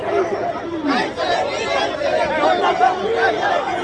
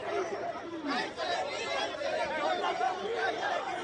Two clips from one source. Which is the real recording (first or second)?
first